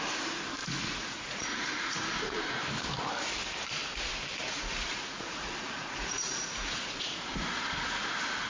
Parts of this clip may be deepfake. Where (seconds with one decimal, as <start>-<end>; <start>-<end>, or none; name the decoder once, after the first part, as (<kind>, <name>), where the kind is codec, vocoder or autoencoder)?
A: 0.6-2.4 (vocoder, Vocos); 4.4-7.7